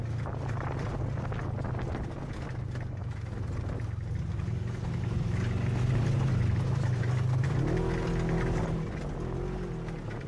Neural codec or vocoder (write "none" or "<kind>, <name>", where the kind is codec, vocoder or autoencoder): none